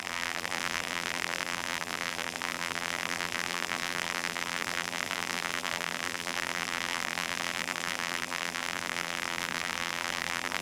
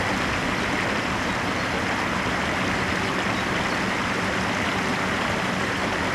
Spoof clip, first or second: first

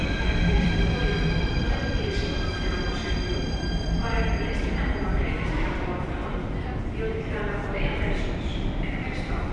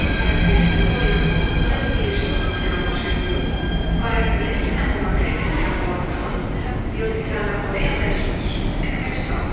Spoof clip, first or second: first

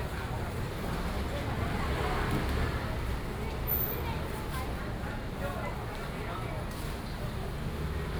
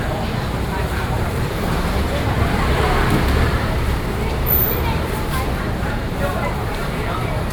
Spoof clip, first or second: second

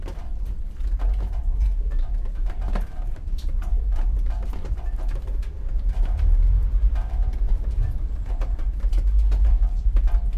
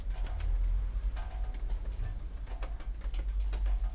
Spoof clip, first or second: first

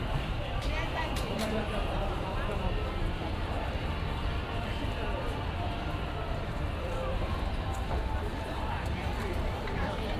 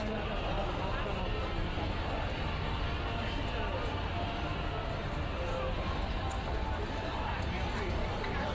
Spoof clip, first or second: first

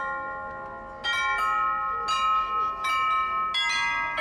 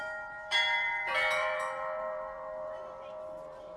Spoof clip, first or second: second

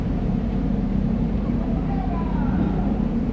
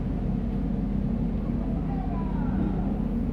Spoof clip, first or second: first